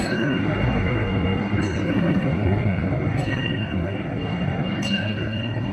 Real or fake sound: fake